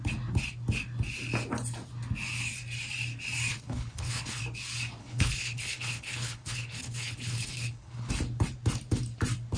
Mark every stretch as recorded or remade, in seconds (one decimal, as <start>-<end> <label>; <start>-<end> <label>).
0.0-3.5 recorded; 3.5-4.4 remade; 4.4-5.0 recorded; 5.0-8.1 remade; 8.1-9.6 recorded